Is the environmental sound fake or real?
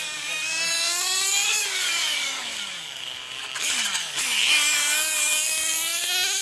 fake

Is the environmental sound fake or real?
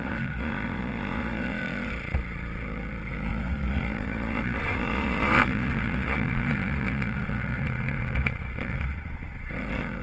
fake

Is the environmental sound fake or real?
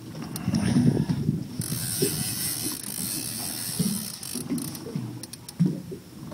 real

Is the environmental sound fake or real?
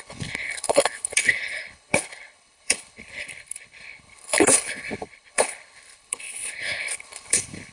fake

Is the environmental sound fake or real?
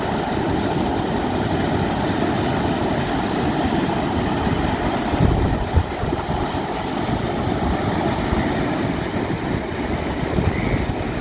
real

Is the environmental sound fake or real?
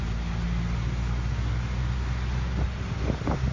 real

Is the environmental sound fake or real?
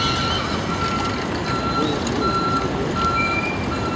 real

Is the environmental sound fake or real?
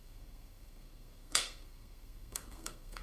fake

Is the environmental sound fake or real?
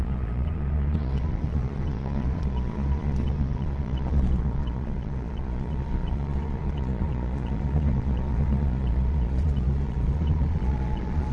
fake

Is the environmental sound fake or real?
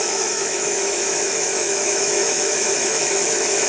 fake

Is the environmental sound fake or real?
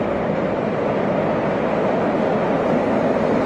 real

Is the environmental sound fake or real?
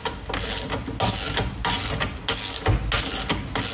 real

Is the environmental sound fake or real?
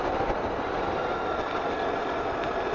real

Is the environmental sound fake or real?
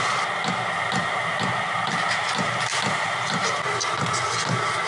real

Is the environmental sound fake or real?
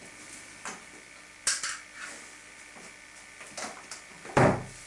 real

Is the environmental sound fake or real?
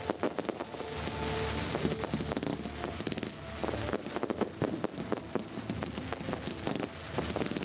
real